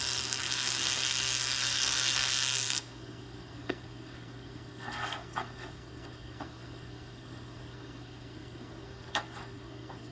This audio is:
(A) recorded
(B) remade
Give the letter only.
B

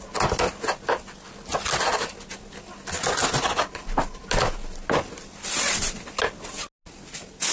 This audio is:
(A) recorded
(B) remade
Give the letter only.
A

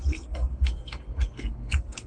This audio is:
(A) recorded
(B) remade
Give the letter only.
B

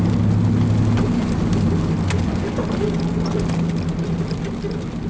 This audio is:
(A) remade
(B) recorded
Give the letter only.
B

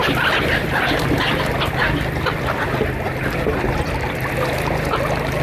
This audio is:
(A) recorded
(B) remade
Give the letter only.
A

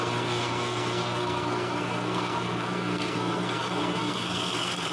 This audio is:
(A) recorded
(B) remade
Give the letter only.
B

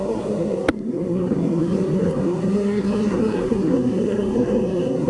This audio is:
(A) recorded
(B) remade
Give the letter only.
B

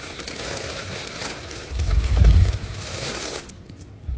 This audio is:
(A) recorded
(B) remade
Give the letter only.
B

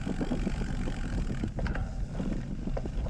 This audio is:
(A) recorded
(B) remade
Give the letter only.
A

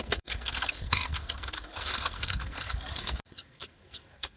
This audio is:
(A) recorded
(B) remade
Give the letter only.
B